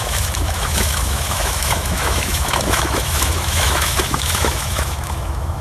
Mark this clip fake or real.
fake